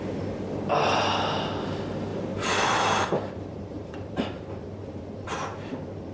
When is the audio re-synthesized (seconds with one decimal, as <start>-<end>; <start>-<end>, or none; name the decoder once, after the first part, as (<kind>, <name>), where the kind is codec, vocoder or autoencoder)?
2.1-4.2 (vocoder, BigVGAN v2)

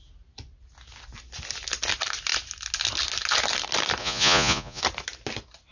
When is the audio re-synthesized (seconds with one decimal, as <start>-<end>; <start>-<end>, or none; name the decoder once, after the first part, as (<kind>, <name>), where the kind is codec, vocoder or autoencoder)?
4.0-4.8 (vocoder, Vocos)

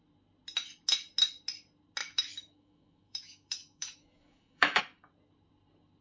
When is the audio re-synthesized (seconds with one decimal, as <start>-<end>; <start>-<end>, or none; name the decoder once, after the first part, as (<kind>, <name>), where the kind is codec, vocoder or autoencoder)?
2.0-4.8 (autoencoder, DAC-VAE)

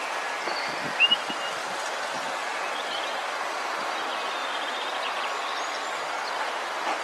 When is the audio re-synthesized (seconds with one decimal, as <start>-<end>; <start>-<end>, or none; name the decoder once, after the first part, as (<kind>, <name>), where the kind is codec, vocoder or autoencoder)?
1.6-3.4 (vocoder, BigVGAN v2); 4.4-5.5

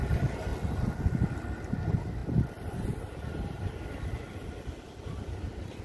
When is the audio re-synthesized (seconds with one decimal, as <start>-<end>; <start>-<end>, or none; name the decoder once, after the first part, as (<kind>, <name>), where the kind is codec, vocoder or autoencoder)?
none

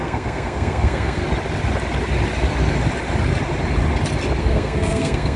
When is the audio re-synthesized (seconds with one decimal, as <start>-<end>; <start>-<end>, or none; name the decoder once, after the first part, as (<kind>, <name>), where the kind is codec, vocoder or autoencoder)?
0.0-1.2 (codec, SNAC); 4.4-5.4